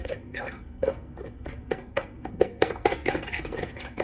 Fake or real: fake